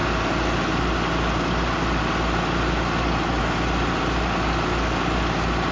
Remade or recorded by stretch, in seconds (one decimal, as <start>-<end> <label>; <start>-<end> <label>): 0.0-5.7 recorded